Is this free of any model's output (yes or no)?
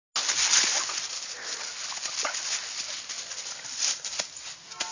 yes